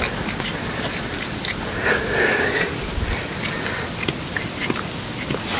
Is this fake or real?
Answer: real